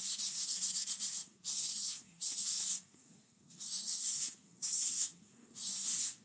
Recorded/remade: remade